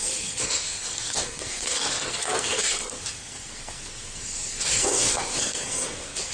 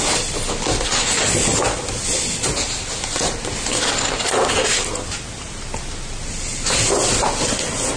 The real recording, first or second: second